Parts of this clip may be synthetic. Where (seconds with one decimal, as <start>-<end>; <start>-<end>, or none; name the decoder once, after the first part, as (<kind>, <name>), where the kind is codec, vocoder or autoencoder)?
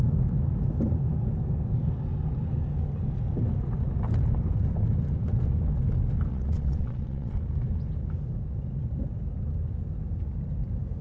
6.3-7.4 (vocoder, WaveNeXt)